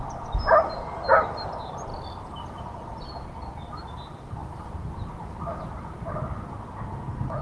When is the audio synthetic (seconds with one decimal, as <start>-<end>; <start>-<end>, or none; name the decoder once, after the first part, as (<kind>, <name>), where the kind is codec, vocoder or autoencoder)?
1.9-2.6 (vocoder, BigVGAN v2); 4.4-6.3